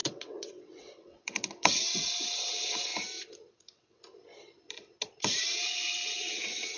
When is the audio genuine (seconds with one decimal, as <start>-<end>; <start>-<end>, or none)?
2.9-3.5; 4.0-5.5